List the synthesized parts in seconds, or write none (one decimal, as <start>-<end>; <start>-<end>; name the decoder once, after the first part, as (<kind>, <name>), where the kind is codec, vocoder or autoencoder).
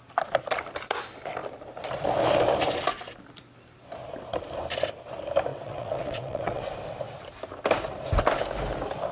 5.5-6.6 (vocoder, WaveNeXt)